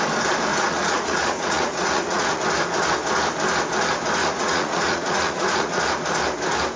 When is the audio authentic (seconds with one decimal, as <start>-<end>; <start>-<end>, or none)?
0.0-0.5; 2.4-4.2; 5.8-6.8